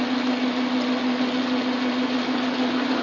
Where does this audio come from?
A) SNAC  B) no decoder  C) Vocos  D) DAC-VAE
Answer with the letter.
B